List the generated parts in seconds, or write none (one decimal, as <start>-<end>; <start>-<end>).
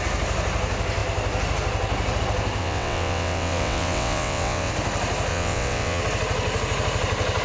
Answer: 2.6-4.7; 5.3-6.0